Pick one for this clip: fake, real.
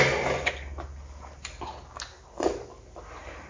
real